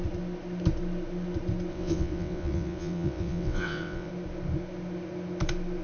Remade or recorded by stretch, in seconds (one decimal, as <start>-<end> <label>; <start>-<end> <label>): 0.0-1.7 recorded; 1.7-4.1 remade; 4.1-5.8 recorded